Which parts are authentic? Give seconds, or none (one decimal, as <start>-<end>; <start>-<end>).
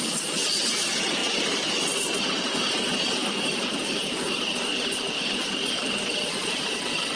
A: 0.0-7.2